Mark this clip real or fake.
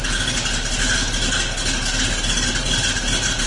real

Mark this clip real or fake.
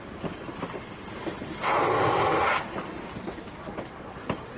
real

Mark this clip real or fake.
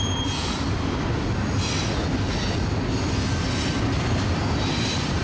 real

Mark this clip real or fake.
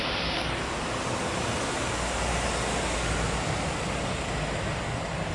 real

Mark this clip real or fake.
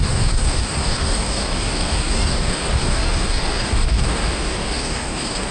fake